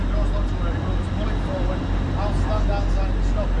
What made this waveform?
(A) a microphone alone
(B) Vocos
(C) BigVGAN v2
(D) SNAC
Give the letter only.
A